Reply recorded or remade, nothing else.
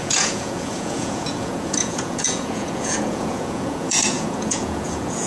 remade